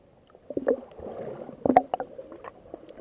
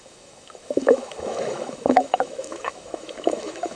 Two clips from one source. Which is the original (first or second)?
first